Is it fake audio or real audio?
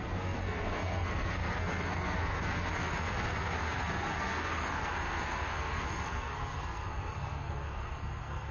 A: fake